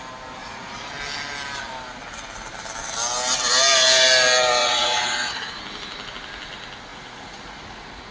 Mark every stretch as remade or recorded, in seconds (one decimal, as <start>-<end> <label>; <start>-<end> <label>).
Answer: 0.0-0.4 recorded; 0.4-0.9 remade; 0.9-4.6 recorded; 4.6-5.6 remade; 5.6-6.9 recorded; 6.9-8.1 remade